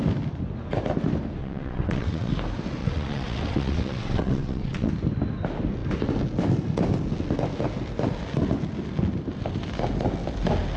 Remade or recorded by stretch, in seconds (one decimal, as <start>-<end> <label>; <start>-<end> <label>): 0.0-1.4 recorded; 1.4-2.3 remade; 2.3-2.8 recorded; 2.8-4.9 remade; 4.9-10.8 recorded